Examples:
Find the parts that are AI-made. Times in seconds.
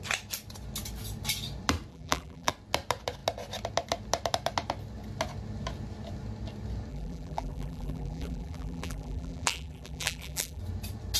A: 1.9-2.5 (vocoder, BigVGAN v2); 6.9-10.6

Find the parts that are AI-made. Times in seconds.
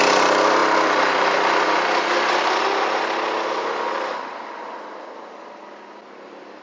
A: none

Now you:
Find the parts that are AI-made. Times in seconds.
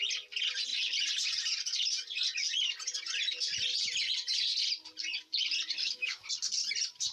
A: 5.8-6.3 (autoencoder, DAC-VAE)